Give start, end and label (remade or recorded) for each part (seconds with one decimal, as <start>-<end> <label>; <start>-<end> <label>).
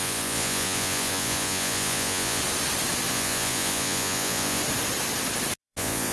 0.0-2.4 remade; 2.4-3.1 recorded; 3.1-4.6 remade; 4.6-5.6 recorded; 5.6-6.1 remade